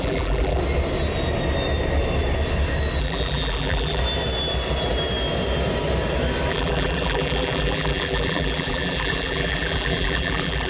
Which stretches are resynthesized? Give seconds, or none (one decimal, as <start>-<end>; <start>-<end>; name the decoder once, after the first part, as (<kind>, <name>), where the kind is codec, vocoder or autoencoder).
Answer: 0.0-0.6 (vocoder, BigVGAN v2); 3.0-4.0; 6.5-10.7

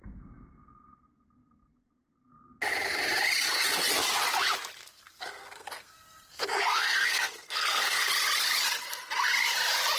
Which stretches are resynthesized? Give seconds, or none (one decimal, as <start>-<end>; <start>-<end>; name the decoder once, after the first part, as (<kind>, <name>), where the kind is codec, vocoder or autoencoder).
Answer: 4.8-8.1 (codec, SNAC)

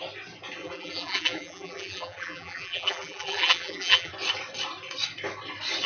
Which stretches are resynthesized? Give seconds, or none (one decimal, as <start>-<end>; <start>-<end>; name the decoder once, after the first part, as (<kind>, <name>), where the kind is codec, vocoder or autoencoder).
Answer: 0.6-4.1 (vocoder, BigVGAN v2)